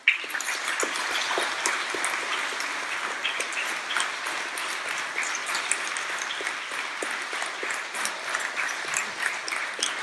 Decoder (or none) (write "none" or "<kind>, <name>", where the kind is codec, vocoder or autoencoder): none